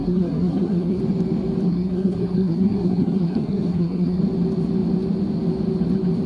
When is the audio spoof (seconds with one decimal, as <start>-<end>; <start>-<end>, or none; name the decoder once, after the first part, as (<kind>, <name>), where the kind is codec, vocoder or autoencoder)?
0.0-1.0 (codec, SNAC); 1.7-4.2